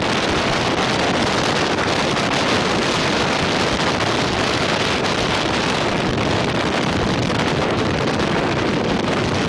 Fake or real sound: real